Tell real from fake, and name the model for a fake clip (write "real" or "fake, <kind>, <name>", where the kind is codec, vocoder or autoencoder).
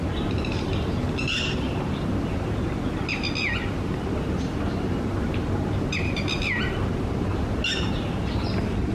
real